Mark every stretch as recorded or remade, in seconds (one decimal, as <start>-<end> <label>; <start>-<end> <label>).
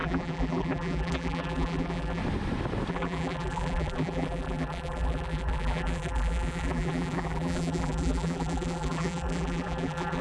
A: 0.0-2.2 remade; 2.2-2.9 recorded; 2.9-10.2 remade